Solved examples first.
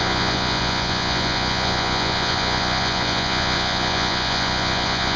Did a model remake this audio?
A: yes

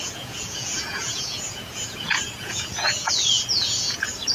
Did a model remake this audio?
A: yes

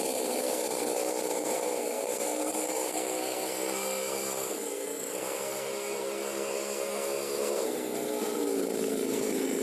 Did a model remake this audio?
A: yes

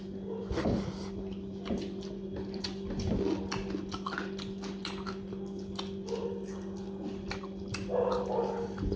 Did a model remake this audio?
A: no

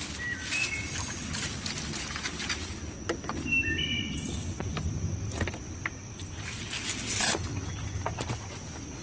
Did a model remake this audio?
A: no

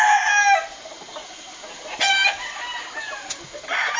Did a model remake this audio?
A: no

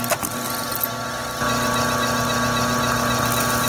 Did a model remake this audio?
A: no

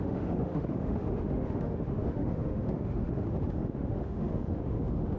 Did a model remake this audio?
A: yes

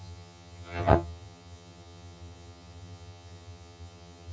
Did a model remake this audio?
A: yes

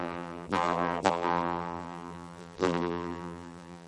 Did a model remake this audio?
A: yes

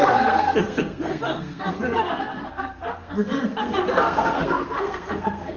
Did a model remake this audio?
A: yes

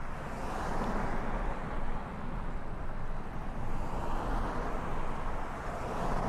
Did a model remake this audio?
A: no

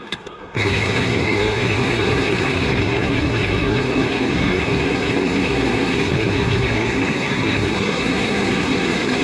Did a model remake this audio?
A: yes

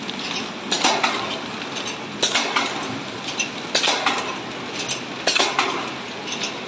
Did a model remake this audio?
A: no